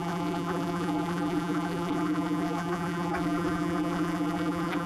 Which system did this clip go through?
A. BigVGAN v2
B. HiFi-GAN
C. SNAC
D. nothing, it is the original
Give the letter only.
A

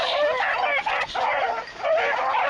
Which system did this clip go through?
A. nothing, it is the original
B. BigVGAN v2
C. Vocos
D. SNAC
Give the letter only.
B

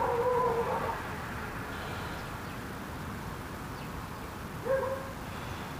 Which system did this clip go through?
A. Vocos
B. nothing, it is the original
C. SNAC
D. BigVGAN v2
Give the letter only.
B